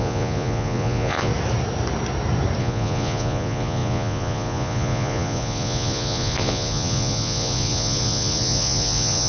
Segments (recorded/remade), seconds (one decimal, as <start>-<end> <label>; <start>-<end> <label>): 0.0-1.3 remade; 1.3-2.6 recorded; 2.6-9.3 remade